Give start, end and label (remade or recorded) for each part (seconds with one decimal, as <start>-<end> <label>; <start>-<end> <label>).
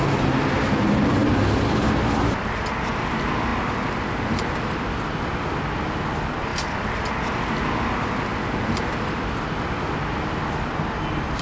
0.0-11.4 recorded